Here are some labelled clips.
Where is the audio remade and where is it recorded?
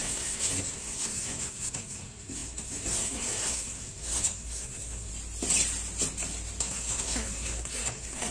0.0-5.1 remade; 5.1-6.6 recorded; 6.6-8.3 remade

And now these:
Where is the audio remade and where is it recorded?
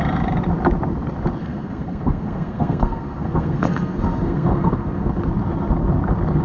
0.0-1.4 recorded; 1.4-5.2 remade; 5.2-6.4 recorded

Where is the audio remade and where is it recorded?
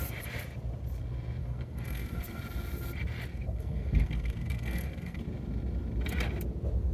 0.0-1.4 recorded; 1.4-2.4 remade; 2.4-3.3 recorded; 3.3-5.2 remade; 5.2-6.9 recorded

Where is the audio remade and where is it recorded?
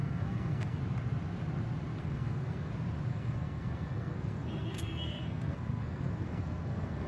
0.0-0.8 remade; 0.8-2.0 recorded; 2.0-2.7 remade; 2.7-3.1 recorded; 3.1-7.1 remade